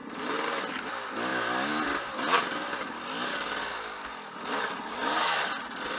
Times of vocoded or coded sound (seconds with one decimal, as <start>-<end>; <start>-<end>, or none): none